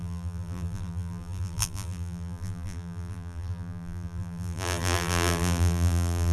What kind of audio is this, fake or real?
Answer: fake